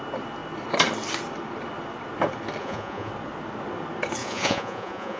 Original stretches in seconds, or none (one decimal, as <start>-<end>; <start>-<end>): 0.0-2.6; 3.1-4.2